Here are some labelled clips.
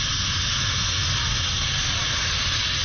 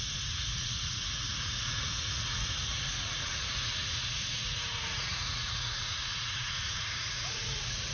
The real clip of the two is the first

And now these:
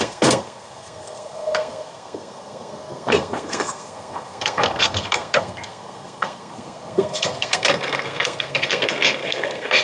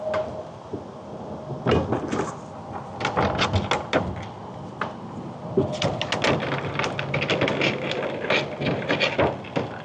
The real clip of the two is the second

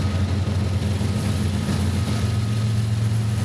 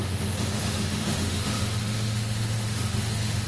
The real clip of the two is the first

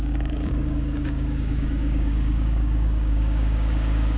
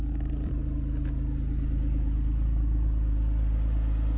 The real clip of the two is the second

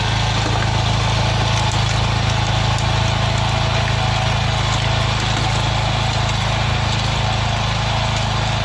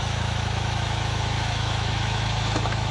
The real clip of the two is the first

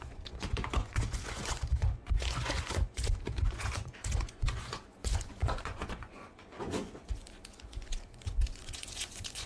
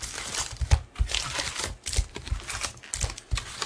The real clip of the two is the second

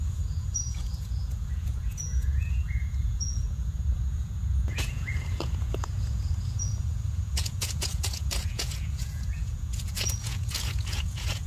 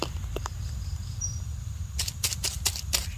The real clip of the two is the second